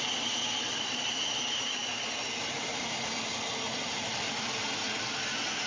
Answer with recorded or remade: recorded